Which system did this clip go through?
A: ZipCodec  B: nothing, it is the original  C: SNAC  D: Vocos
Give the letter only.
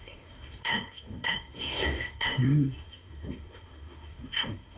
C